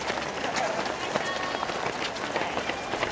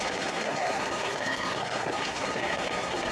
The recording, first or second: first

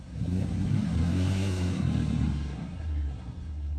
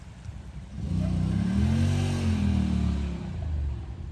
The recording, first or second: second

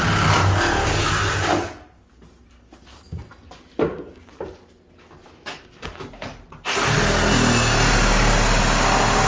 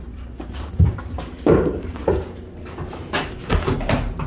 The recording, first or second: first